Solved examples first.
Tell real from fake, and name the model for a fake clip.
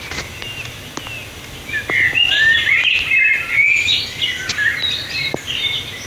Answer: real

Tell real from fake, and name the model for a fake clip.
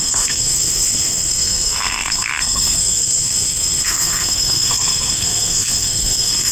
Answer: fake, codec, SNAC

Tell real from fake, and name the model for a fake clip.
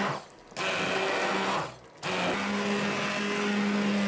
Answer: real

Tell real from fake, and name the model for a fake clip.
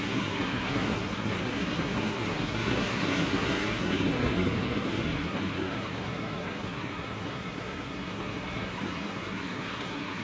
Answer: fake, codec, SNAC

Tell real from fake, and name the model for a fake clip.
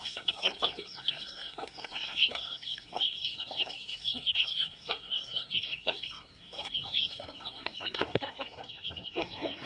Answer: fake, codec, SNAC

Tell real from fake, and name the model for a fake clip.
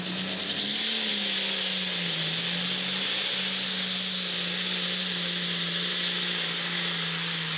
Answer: real